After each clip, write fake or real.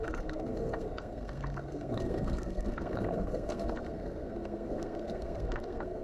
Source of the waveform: fake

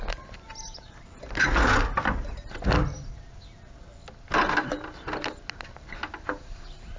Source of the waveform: real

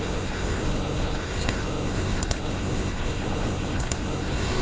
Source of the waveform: fake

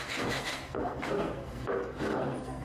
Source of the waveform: fake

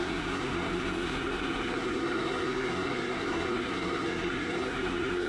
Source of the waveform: fake